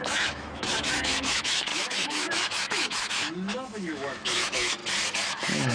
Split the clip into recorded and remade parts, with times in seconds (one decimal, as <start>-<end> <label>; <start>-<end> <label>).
0.0-4.8 remade; 4.8-5.3 recorded; 5.3-5.7 remade